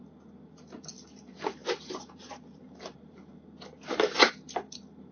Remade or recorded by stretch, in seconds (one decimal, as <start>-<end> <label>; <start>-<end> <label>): 0.0-0.9 recorded; 0.9-3.3 remade; 3.3-5.1 recorded